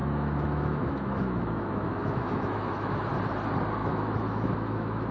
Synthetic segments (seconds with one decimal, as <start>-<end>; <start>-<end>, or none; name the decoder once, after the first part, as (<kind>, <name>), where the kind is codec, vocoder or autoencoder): 0.0-3.1 (autoencoder, DAC-VAE); 3.8-5.1